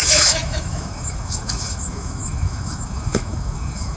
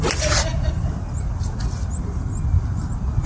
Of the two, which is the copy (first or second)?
first